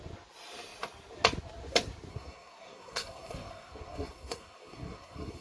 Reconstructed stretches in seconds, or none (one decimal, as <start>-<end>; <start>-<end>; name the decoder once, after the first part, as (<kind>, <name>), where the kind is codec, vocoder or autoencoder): 2.1-5.4 (codec, SNAC)